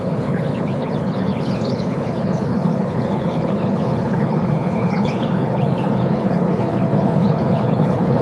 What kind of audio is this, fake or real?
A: fake